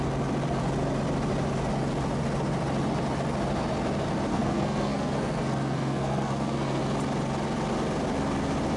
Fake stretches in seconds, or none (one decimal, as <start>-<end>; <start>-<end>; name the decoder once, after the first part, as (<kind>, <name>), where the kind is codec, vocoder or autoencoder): 4.3-6.8 (codec, SNAC)